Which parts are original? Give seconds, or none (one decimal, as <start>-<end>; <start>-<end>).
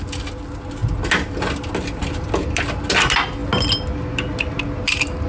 0.0-5.3